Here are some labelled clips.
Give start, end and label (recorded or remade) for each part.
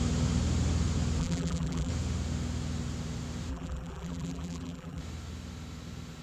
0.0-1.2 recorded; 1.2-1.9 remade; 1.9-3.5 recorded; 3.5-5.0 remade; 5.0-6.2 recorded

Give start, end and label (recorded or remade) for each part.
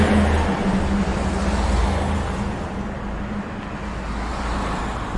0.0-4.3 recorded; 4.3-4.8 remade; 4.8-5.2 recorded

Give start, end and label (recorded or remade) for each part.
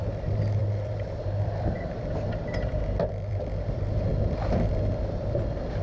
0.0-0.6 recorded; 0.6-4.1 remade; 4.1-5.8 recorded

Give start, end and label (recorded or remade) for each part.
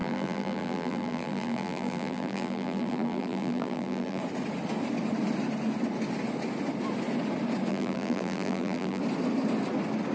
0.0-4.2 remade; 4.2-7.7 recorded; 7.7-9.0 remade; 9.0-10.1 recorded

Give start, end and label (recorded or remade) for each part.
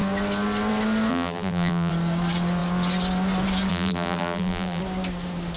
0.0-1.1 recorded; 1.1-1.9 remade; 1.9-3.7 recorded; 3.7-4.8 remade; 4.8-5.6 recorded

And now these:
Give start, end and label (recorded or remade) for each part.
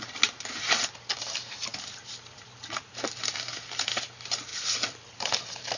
0.0-1.7 recorded; 1.7-2.9 remade; 2.9-4.5 recorded; 4.5-5.8 remade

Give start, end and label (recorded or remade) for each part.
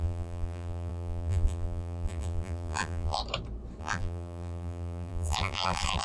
0.0-3.2 remade; 3.2-3.8 recorded; 3.8-6.0 remade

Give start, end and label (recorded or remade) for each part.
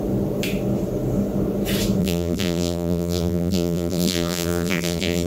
0.0-2.0 recorded; 2.0-5.3 remade